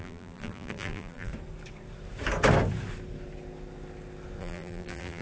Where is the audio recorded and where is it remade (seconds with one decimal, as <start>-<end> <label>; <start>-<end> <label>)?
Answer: 0.0-1.3 remade; 1.3-4.4 recorded; 4.4-5.2 remade